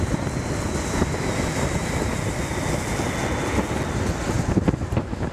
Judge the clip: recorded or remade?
recorded